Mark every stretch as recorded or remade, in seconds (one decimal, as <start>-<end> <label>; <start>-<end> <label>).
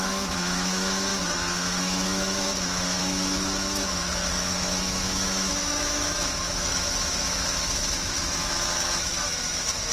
0.0-9.9 remade